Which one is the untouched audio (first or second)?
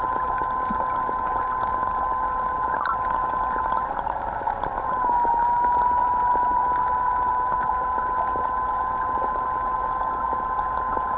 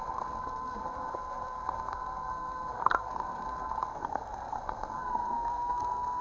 first